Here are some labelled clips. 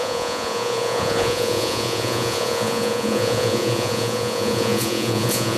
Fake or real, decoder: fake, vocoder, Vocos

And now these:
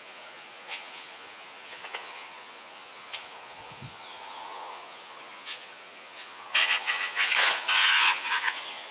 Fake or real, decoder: fake, vocoder, Vocos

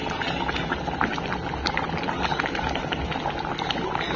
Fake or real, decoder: real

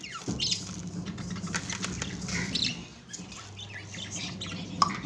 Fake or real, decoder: real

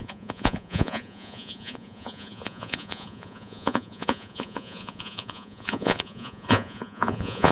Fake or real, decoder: fake, vocoder, Vocos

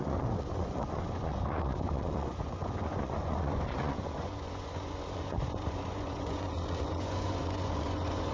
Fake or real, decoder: fake, vocoder, Vocos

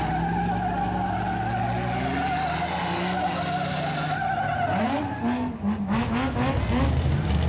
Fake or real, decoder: real